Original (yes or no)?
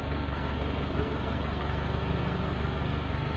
no